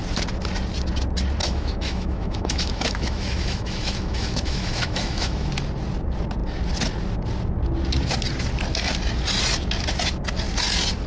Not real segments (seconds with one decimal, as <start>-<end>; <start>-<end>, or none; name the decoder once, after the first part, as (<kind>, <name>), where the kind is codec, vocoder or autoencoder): 1.4-5.5 (autoencoder, DAC-VAE)